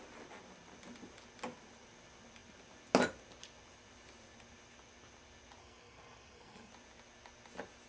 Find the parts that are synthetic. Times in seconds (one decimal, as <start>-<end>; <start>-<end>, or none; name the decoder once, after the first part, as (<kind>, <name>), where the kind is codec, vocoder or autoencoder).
5.6-6.7 (codec, SNAC)